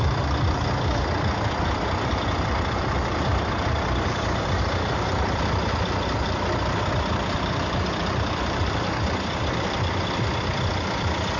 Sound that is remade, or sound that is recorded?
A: remade